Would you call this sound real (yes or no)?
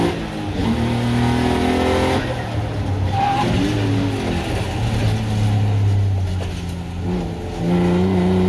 yes